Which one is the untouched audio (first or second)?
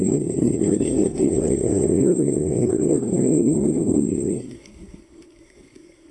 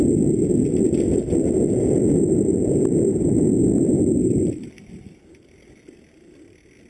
second